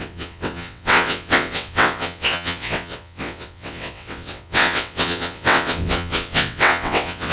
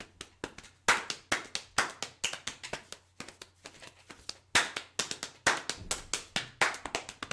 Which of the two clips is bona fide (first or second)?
second